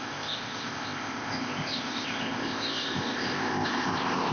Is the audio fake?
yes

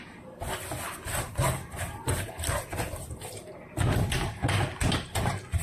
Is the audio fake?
no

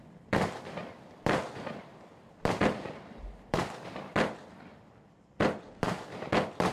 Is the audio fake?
yes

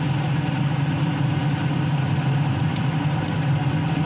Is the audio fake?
no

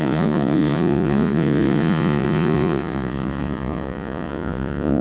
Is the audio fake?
yes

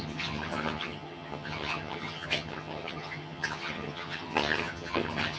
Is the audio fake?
yes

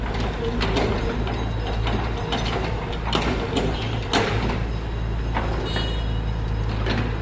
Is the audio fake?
no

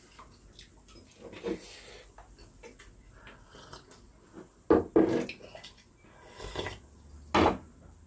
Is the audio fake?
no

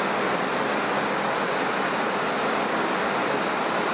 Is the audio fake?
no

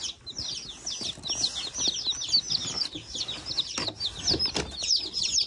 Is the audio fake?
no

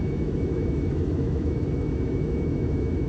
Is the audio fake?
yes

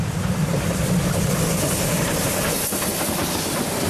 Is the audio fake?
no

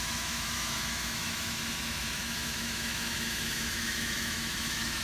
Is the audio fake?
yes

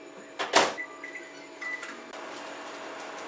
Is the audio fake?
no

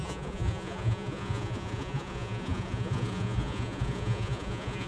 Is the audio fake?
yes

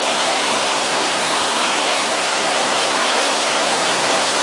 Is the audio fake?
yes